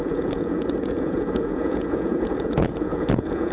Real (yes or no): no